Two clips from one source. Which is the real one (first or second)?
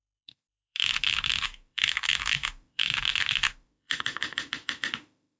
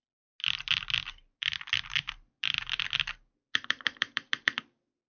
second